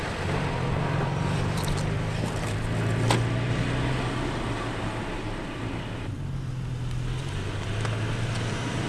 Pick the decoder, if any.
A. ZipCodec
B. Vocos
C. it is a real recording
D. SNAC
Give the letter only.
C